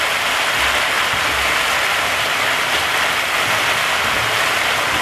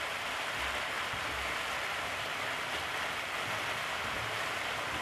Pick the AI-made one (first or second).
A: second